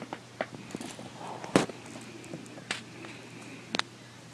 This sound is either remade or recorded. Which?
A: recorded